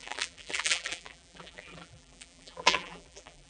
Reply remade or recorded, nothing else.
remade